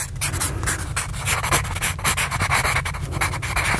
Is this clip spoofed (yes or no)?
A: no